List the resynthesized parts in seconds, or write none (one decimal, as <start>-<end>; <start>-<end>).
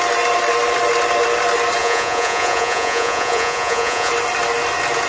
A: 1.8-4.1